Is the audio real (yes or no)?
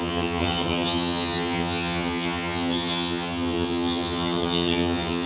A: no